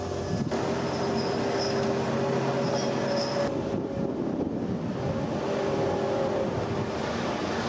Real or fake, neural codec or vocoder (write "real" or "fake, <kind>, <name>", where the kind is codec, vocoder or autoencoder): real